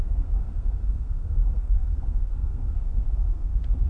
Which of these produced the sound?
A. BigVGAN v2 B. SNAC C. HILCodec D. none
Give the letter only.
B